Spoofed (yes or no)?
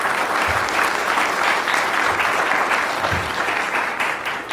no